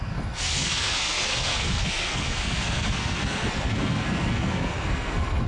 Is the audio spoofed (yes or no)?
yes